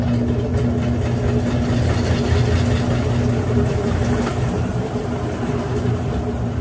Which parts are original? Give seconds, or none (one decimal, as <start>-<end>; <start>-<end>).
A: 0.5-3.3